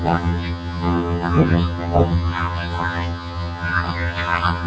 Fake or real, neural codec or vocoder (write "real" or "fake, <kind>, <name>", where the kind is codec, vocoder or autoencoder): fake, vocoder, HiFi-GAN